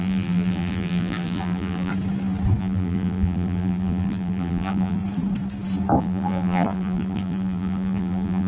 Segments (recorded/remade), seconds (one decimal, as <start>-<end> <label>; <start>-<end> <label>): 0.0-1.9 remade; 1.9-2.6 recorded; 2.6-5.0 remade; 5.0-6.0 recorded; 6.0-8.5 remade